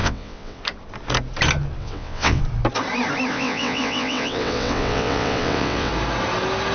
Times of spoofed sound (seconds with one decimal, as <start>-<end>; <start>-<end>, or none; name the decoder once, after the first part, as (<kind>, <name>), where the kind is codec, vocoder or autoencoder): 0.0-0.6 (vocoder, WaveNeXt); 1.8-2.4; 3.3-5.9